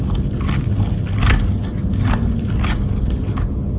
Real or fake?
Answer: real